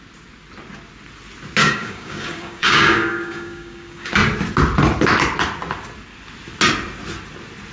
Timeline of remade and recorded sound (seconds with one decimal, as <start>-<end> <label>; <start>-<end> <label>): 0.0-1.6 recorded; 1.6-4.1 remade; 4.1-7.7 recorded

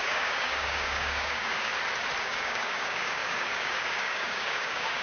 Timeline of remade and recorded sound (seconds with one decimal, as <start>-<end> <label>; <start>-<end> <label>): 0.0-1.7 remade; 1.7-2.2 recorded; 2.2-5.0 remade

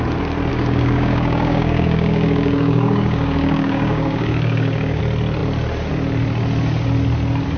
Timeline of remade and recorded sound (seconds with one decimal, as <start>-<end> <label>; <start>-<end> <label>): 0.0-0.5 recorded; 0.5-5.0 remade; 5.0-7.6 recorded

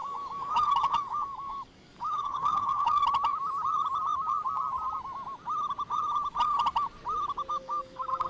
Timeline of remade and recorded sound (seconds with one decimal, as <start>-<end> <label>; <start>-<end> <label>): 0.0-3.0 remade; 3.0-7.5 recorded; 7.5-8.3 remade

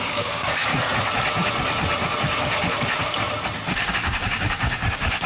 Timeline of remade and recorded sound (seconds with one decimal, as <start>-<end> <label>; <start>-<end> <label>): 0.0-0.7 remade; 0.7-3.9 recorded; 3.9-5.3 remade